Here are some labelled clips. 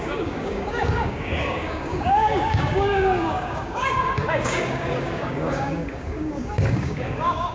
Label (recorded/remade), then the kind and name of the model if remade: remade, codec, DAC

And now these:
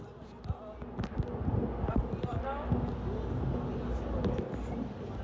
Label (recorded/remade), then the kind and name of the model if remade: recorded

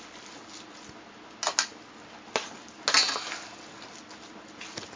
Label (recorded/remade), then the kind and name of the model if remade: recorded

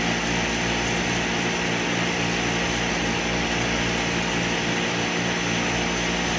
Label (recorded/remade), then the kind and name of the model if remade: recorded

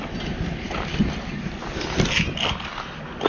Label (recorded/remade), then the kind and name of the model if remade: recorded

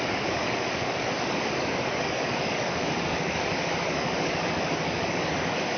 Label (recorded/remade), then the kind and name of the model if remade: remade, codec, DAC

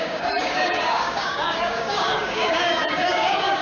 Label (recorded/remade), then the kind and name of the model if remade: remade, codec, DAC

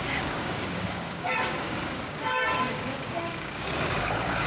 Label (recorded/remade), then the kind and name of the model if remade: remade, codec, DAC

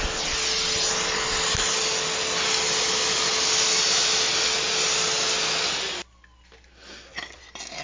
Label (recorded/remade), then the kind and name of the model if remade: recorded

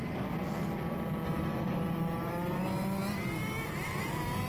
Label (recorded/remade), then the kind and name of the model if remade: recorded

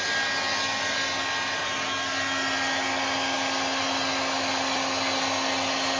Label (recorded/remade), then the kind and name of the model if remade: recorded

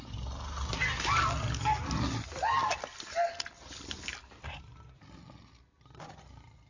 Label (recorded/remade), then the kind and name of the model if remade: recorded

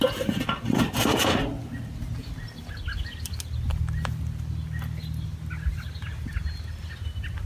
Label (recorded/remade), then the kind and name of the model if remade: recorded